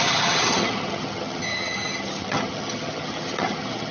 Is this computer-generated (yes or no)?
yes